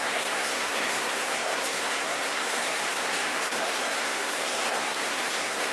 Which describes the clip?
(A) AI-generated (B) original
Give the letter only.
A